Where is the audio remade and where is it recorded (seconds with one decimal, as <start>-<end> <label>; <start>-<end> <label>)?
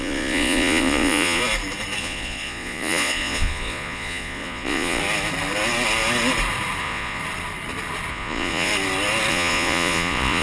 0.0-1.4 remade; 1.4-2.0 recorded; 2.0-5.0 remade; 5.0-6.8 recorded; 6.8-7.2 remade; 7.2-8.1 recorded; 8.1-8.7 remade; 8.7-9.3 recorded; 9.3-10.4 remade